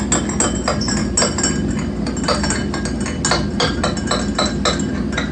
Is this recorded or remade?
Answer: recorded